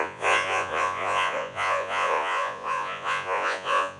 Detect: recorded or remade remade